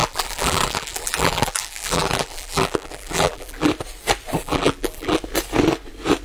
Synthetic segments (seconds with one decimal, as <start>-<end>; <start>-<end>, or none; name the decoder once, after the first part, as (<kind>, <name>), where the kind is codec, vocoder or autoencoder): 0.0-3.7 (vocoder, BigVGAN v2); 4.4-5.2